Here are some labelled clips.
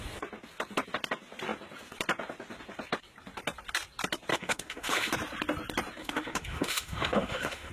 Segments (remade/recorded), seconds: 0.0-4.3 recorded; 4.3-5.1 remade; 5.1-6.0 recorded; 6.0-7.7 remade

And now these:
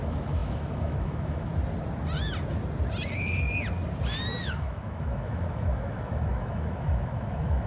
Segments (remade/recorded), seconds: 0.0-1.5 remade; 1.5-4.4 recorded; 4.4-7.7 remade

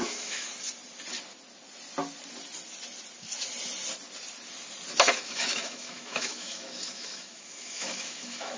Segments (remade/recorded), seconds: 0.0-0.5 remade; 0.5-5.1 recorded; 5.1-8.6 remade

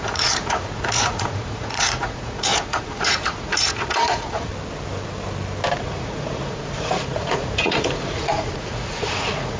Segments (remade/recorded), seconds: 0.0-4.5 remade; 4.5-5.8 recorded; 5.8-9.6 remade

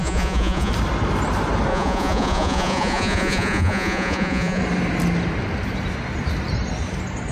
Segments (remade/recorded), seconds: 0.0-0.7 remade; 0.7-1.7 recorded; 1.7-4.6 remade; 4.6-7.3 recorded